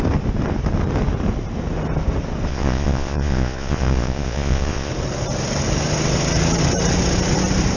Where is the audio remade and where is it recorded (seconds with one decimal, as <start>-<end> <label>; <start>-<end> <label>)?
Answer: 0.0-2.5 recorded; 2.5-4.9 remade; 4.9-7.8 recorded